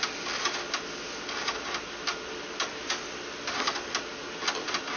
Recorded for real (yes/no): yes